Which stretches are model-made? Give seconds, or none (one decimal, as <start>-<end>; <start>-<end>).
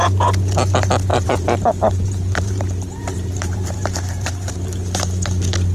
1.1-4.5